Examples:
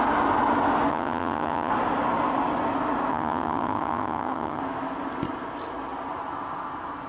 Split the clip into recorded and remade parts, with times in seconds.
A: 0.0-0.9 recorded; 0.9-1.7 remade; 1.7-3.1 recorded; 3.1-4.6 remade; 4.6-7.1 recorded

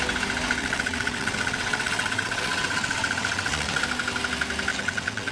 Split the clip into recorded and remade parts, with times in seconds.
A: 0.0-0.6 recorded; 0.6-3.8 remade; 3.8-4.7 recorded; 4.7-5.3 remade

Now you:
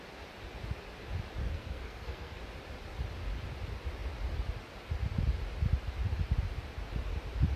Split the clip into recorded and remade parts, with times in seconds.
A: 0.0-1.4 recorded; 1.4-2.4 remade; 2.4-7.6 recorded